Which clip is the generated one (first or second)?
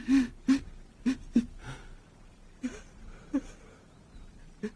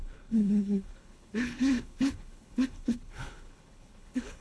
second